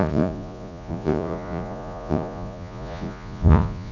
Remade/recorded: remade